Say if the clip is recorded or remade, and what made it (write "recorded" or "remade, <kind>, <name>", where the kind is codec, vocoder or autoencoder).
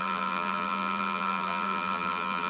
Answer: remade, vocoder, BigVGAN v2